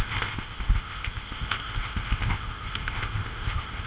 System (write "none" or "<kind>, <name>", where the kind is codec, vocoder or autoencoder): codec, ZipCodec